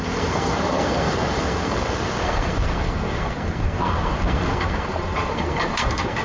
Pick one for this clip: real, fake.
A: fake